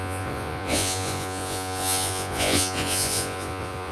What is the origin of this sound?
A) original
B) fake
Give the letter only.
B